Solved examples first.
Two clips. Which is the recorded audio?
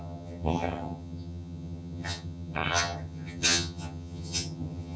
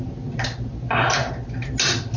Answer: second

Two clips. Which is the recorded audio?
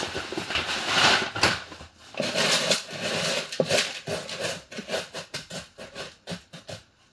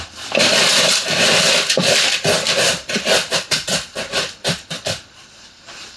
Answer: first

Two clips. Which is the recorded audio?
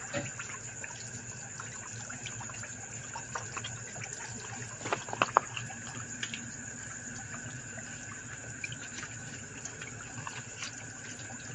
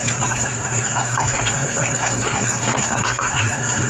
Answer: first